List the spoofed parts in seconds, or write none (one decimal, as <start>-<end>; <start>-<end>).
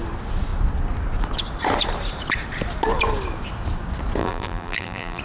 4.2-5.2